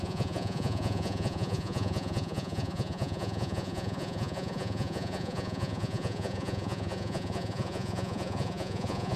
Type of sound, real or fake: fake